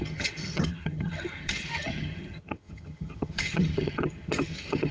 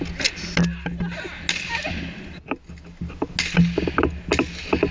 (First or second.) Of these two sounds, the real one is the second